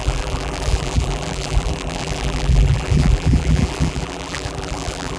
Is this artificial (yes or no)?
yes